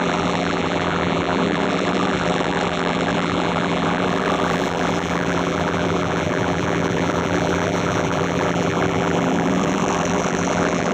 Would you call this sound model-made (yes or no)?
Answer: yes